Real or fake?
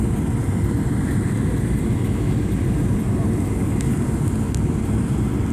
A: real